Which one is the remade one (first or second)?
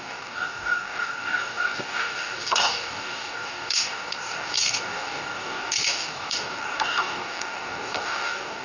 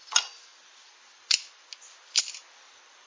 first